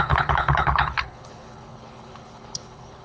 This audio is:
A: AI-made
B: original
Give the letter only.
A